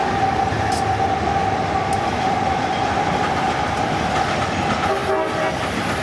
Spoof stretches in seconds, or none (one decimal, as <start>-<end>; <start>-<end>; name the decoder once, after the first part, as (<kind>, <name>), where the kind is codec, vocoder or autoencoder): none

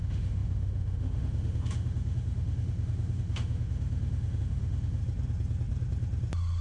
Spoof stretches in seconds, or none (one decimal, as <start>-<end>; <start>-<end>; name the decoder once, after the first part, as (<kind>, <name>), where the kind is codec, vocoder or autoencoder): 0.0-5.0 (autoencoder, DAC-VAE)

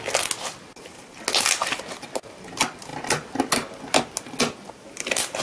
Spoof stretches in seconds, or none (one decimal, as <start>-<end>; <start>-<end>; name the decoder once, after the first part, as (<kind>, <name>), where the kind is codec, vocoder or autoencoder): none

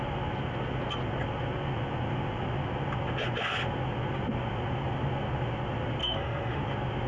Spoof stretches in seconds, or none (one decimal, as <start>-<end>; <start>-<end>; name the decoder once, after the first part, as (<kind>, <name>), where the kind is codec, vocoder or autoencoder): 6.0-6.6 (autoencoder, DAC-VAE)

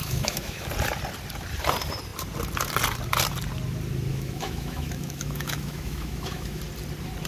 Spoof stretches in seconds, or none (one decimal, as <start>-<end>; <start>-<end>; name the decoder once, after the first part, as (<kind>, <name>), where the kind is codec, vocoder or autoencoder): 0.0-0.7 (autoencoder, DAC-VAE); 4.1-6.6

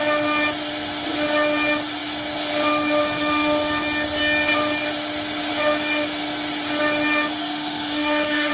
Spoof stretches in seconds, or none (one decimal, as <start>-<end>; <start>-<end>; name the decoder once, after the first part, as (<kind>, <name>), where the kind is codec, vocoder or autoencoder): 7.4-8.5 (autoencoder, DAC-VAE)